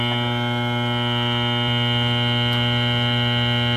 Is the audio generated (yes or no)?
no